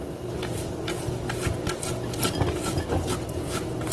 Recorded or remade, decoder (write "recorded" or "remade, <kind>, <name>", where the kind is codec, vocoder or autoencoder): recorded